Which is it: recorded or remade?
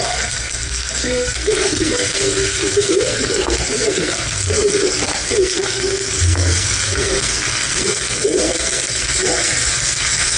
remade